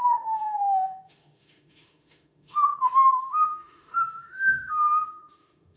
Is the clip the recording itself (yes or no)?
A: no